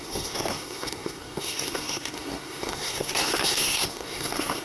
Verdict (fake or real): fake